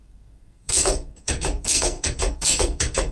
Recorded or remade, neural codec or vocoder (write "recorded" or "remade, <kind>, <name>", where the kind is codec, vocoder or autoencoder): remade, codec, SNAC